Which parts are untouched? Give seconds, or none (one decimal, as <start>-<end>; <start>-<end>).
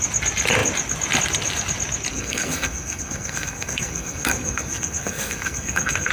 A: 0.0-2.1